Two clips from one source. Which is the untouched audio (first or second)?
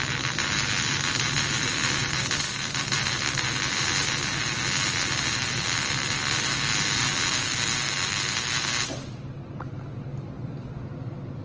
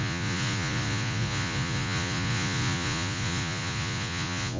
first